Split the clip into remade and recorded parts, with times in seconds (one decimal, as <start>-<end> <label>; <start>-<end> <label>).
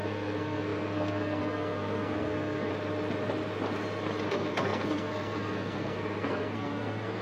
0.0-2.7 remade; 2.7-4.3 recorded; 4.3-7.2 remade